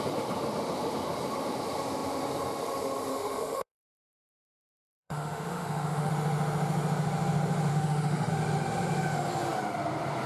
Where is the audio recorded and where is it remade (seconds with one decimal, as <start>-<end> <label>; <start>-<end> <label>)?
0.0-3.1 recorded; 3.1-6.1 remade; 6.1-7.7 recorded; 7.7-8.3 remade; 8.3-10.3 recorded